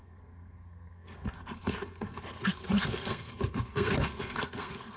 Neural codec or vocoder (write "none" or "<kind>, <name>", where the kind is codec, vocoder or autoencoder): codec, SNAC